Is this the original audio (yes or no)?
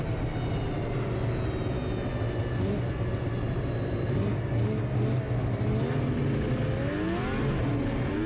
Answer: yes